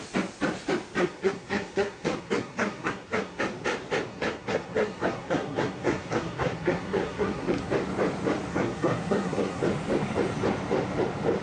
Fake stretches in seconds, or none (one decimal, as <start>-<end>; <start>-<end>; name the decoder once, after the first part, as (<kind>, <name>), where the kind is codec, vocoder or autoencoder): 1.0-3.4 (codec, SNAC); 4.1-7.7; 8.5-9.6